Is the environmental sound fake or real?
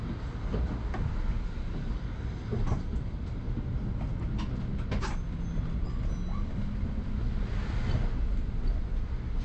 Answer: real